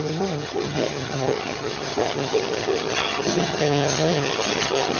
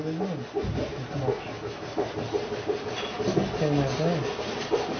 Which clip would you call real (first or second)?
second